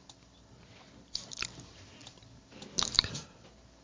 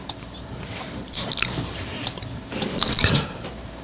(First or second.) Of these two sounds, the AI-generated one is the second